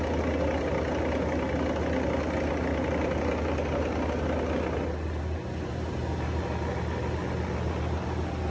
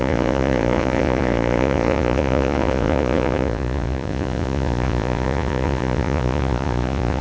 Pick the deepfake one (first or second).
second